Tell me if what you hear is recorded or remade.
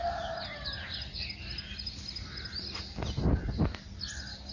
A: recorded